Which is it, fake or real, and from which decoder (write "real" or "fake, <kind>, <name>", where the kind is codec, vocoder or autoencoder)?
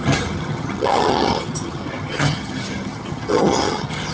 fake, vocoder, HiFi-GAN